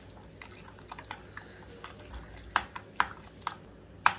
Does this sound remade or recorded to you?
recorded